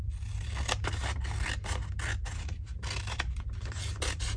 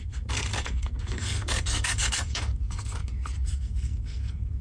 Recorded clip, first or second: first